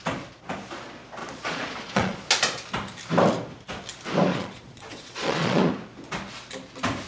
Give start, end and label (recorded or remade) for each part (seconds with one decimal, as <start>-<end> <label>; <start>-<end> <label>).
0.0-1.2 recorded; 1.2-2.3 remade; 2.3-4.3 recorded; 4.3-5.7 remade; 5.7-7.1 recorded